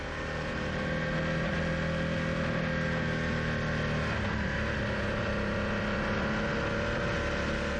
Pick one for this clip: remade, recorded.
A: recorded